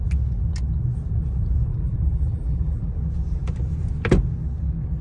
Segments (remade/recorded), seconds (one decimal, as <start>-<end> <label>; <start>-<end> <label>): 0.0-1.7 recorded; 1.7-2.9 remade; 2.9-5.0 recorded